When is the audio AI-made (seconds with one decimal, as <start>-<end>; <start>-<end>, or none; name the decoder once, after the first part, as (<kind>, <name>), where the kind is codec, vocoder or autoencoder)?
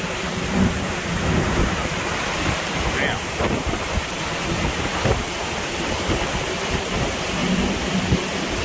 none